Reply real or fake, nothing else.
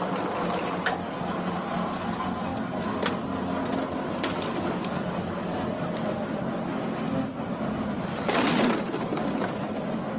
real